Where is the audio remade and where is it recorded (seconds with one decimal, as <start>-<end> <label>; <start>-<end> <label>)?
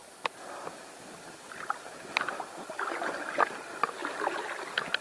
0.0-5.0 recorded